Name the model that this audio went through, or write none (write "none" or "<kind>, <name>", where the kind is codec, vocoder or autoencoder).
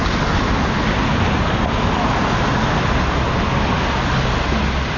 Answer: none